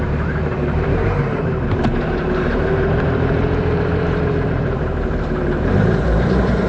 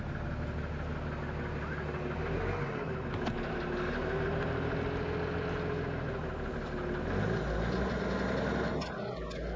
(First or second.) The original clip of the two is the second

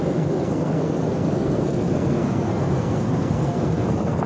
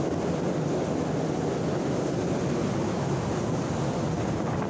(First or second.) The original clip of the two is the second